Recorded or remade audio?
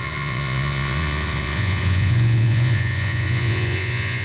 remade